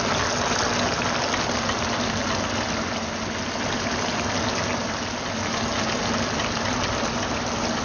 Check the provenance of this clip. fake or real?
real